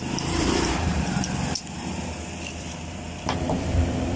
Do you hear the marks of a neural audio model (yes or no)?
yes